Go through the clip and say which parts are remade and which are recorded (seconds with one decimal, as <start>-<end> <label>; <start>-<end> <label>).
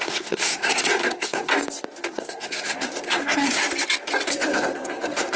0.0-1.5 remade; 1.5-2.1 recorded; 2.1-3.6 remade; 3.6-4.3 recorded; 4.3-5.4 remade